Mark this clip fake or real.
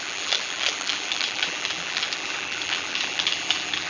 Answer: fake